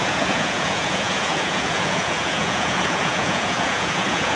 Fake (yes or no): yes